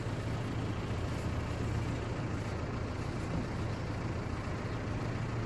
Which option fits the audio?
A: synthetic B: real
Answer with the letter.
B